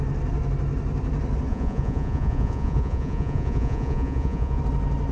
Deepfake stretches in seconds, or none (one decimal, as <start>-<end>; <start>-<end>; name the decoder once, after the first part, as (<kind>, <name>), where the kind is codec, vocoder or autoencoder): 1.5-4.6 (vocoder, Vocos)

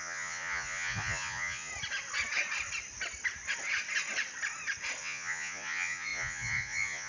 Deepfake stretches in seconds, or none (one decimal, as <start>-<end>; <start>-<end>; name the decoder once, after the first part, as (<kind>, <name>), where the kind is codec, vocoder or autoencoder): 0.0-1.7 (vocoder, Vocos); 5.0-7.1

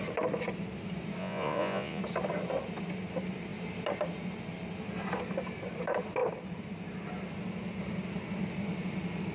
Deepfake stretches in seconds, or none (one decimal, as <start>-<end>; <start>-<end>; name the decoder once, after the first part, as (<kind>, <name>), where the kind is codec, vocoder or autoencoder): 1.2-2.0 (vocoder, Vocos)

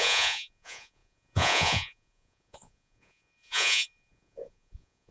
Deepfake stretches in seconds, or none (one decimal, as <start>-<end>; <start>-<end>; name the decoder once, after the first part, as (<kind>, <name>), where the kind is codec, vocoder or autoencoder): 0.0-5.1 (vocoder, Vocos)

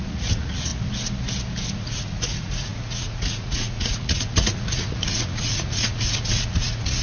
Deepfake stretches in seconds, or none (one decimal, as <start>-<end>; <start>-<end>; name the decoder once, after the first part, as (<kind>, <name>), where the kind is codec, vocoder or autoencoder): 0.0-0.7 (vocoder, Vocos); 1.7-7.0

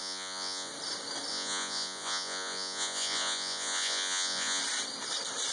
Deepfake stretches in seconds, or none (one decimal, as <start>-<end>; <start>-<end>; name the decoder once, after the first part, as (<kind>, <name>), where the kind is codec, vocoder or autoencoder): 0.0-0.7 (vocoder, Vocos); 1.3-4.6

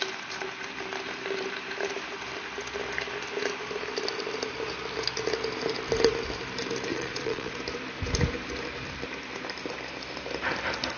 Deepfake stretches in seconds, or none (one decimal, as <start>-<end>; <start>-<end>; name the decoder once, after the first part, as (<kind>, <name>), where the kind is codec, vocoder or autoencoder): 6.9-7.5 (vocoder, Vocos)